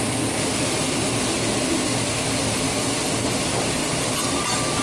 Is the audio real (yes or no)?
yes